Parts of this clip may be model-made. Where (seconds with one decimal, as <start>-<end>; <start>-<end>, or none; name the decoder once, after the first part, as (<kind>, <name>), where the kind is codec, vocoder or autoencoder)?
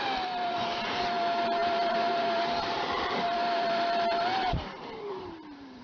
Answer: 0.0-5.8 (vocoder, BigVGAN v2)